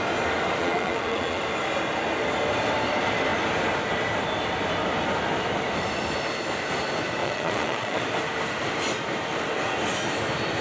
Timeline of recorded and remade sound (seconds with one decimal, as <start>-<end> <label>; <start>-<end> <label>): 0.0-0.6 recorded; 0.6-1.4 remade; 1.4-7.2 recorded; 7.2-8.0 remade; 8.0-10.6 recorded